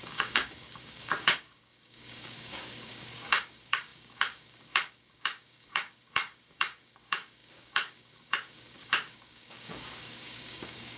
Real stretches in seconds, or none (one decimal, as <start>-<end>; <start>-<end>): none